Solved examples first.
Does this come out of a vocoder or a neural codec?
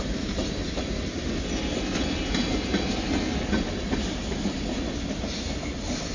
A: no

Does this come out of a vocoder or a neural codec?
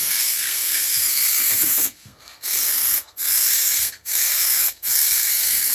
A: yes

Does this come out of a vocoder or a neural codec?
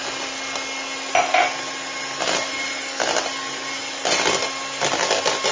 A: no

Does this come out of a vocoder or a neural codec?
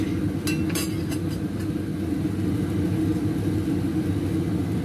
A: no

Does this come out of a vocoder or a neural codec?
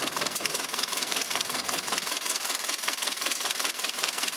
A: yes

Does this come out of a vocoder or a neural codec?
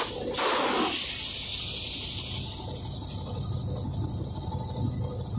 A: no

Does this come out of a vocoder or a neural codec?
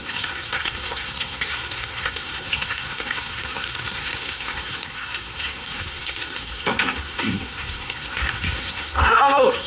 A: yes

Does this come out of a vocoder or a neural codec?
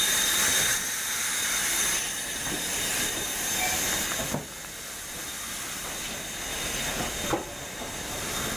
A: no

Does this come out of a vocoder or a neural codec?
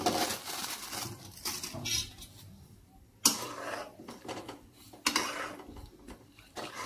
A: no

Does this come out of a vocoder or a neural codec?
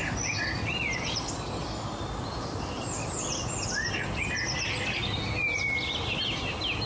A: no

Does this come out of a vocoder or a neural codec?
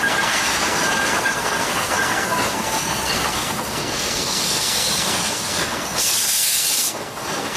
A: yes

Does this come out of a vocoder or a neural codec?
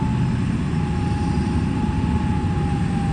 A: no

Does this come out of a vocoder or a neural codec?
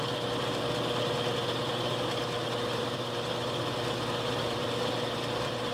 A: no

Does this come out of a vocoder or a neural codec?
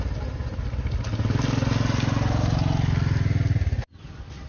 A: no